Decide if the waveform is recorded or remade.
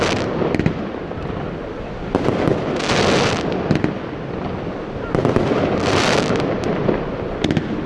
recorded